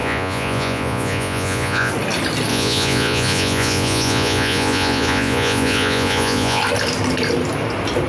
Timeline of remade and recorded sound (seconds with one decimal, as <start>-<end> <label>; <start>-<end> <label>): 0.0-1.9 remade; 1.9-2.5 recorded; 2.5-6.6 remade; 6.6-8.1 recorded